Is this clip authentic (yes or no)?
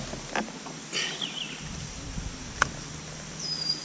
yes